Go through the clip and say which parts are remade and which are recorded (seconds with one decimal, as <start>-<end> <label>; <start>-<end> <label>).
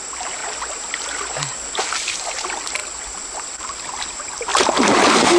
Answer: 0.0-0.4 remade; 0.4-1.8 recorded; 1.8-4.5 remade; 4.5-5.4 recorded